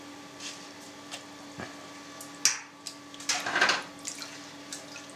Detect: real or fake real